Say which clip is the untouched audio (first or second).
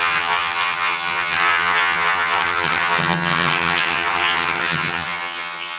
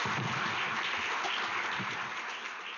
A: second